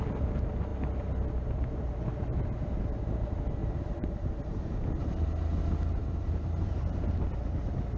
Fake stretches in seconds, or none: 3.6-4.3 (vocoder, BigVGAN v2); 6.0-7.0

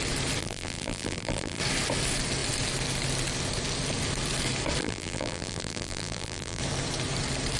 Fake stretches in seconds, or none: 0.4-1.6 (vocoder, BigVGAN v2); 4.8-6.6

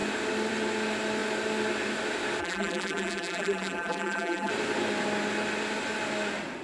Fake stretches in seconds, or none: 2.4-4.5 (vocoder, BigVGAN v2)